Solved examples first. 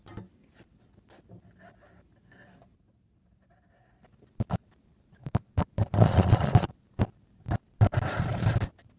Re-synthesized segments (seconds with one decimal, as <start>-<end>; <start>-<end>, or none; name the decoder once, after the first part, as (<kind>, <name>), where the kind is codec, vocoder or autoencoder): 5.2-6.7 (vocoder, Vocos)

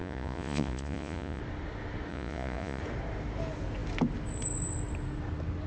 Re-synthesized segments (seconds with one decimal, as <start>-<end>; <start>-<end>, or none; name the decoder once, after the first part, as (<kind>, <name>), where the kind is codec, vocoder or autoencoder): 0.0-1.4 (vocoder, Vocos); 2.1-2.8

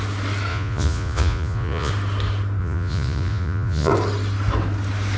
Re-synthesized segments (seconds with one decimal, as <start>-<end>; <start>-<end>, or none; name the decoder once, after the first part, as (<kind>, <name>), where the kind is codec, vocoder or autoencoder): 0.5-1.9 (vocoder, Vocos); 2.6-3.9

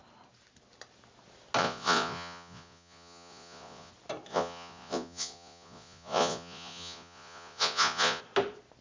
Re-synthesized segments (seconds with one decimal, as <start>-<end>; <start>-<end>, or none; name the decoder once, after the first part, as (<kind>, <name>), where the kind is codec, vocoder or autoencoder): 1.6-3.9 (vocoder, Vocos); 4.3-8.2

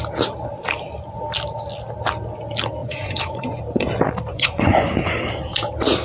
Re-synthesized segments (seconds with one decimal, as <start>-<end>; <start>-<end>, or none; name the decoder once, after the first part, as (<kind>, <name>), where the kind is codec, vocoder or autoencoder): 2.8-3.6 (vocoder, Vocos); 4.3-4.9

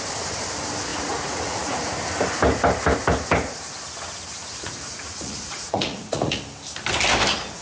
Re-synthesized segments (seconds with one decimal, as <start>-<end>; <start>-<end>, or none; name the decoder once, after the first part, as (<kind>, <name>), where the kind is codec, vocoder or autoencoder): 0.9-1.9 (vocoder, Vocos); 4.4-6.4